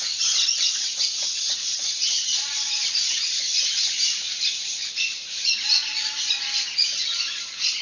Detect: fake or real fake